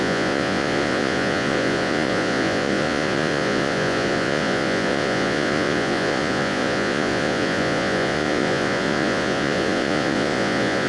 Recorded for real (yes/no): no